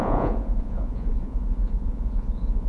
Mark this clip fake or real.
fake